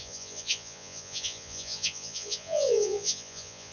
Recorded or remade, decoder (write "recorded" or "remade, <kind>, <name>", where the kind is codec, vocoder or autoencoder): remade, vocoder, Vocos